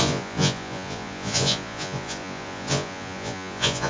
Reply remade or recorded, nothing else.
remade